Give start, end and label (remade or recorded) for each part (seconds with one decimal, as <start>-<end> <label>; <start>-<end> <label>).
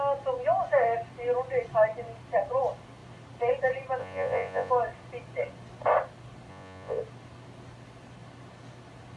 0.0-4.0 recorded; 4.0-4.7 remade; 4.7-6.5 recorded; 6.5-7.0 remade; 7.0-9.2 recorded